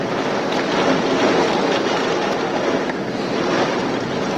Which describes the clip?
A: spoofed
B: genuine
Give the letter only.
B